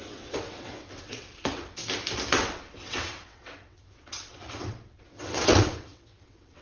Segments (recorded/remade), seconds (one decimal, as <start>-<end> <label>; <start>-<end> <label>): 0.0-1.8 remade; 1.8-2.3 recorded; 2.3-6.6 remade